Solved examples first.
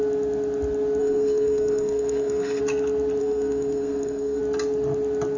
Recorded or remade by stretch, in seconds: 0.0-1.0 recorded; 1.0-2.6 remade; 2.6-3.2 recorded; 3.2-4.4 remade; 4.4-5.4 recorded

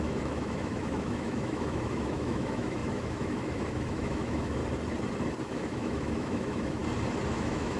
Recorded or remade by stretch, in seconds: 0.0-4.6 remade; 4.6-5.4 recorded; 5.4-6.8 remade; 6.8-7.3 recorded; 7.3-7.8 remade

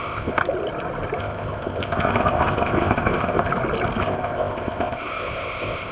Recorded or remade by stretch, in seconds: 0.0-0.4 remade; 0.4-1.2 recorded; 1.2-3.5 remade; 3.5-4.0 recorded; 4.0-5.9 remade

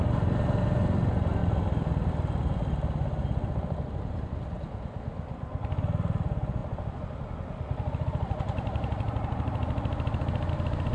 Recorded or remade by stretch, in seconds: 0.0-1.4 recorded; 1.4-2.1 remade; 2.1-10.9 recorded

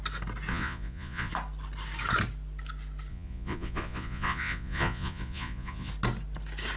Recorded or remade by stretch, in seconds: 0.0-0.5 recorded; 0.5-1.3 remade; 1.3-3.1 recorded; 3.1-5.9 remade; 5.9-6.8 recorded

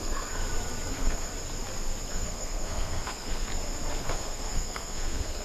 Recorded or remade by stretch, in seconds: 0.0-0.4 remade; 0.4-0.9 recorded; 0.9-1.3 remade; 1.3-2.1 recorded; 2.1-3.5 remade; 3.5-4.0 recorded; 4.0-5.4 remade

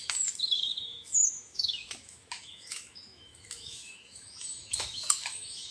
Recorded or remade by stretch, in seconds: 0.0-5.7 remade